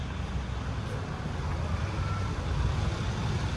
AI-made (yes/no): no